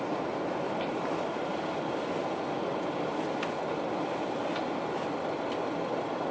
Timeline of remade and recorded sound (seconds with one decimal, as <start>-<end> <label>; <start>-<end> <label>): 0.0-6.3 recorded